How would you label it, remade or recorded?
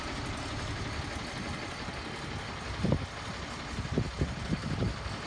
recorded